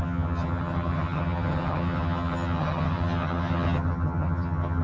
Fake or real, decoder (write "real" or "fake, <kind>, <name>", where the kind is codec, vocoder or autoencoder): fake, vocoder, HiFi-GAN